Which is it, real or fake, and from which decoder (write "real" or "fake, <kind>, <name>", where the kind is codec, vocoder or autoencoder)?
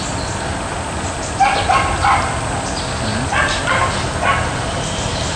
real